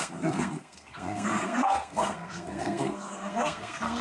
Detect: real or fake fake